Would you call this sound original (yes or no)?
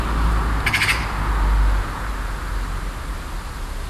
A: yes